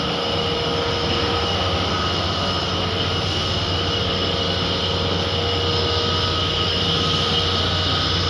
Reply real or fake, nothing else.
real